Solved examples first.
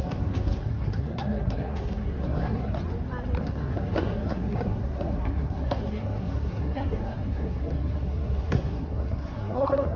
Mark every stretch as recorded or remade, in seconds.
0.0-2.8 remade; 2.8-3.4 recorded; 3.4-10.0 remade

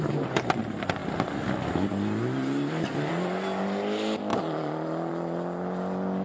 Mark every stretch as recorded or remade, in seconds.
0.0-6.2 recorded

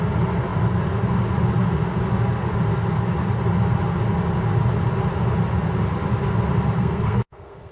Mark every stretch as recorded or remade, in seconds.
0.0-6.8 recorded; 6.8-7.7 remade